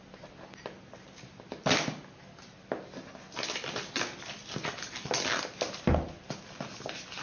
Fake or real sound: real